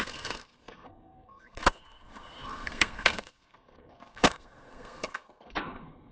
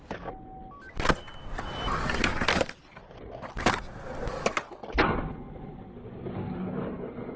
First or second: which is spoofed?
first